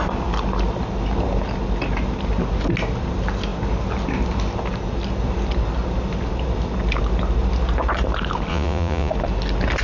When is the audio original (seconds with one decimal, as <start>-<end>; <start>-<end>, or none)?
0.0-8.5; 9.1-9.8